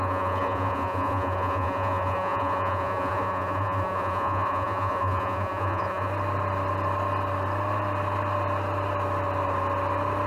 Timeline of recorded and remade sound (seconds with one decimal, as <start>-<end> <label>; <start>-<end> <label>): 0.0-6.1 remade; 6.1-10.3 recorded